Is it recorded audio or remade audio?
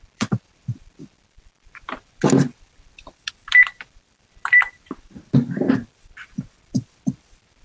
remade